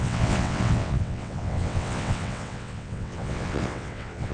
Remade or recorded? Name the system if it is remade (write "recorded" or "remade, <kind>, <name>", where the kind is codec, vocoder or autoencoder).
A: remade, vocoder, WaveNeXt